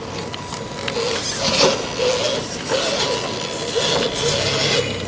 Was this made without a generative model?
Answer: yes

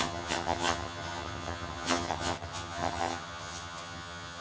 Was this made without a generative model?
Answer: no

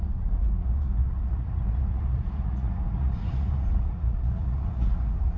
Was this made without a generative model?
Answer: no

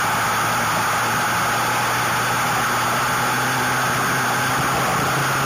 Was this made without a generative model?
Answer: yes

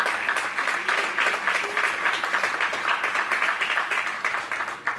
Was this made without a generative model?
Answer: yes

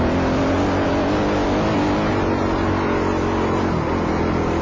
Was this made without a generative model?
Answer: yes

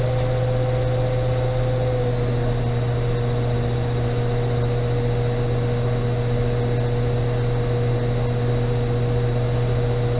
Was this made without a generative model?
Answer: yes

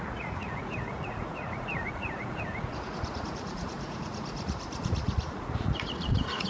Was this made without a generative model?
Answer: no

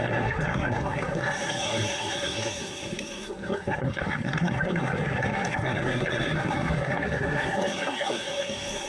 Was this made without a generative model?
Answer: no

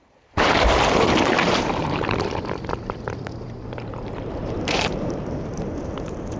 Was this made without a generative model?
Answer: no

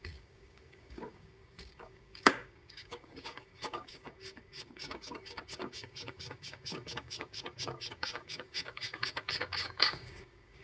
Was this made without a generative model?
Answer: no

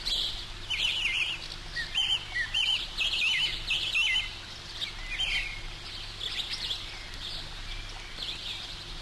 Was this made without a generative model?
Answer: yes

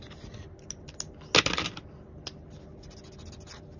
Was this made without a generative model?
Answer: yes